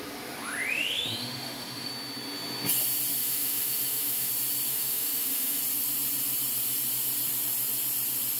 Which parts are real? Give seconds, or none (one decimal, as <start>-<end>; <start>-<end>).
0.0-0.7; 1.9-3.2; 4.3-4.7; 5.6-8.4